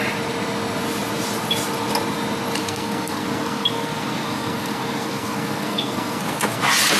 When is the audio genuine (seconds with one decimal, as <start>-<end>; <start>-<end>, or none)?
0.0-2.6; 6.6-7.0